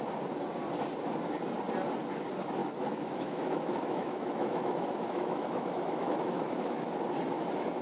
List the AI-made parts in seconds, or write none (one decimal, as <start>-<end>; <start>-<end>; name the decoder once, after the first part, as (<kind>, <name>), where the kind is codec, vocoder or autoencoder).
2.6-6.9 (autoencoder, DAC-VAE)